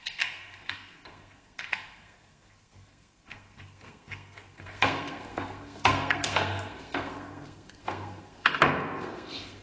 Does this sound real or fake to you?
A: fake